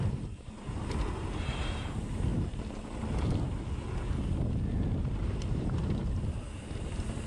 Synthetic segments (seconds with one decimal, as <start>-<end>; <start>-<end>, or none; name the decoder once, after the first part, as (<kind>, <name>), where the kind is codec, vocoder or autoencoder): 0.0-2.3 (vocoder, BigVGAN v2); 5.0-6.0